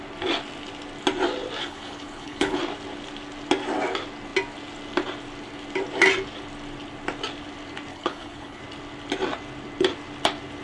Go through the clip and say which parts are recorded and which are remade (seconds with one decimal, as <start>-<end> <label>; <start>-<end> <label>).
0.0-1.6 recorded; 1.6-2.6 remade; 2.6-7.9 recorded; 7.9-8.6 remade; 8.6-10.6 recorded